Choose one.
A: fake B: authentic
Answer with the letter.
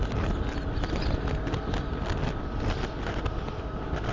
B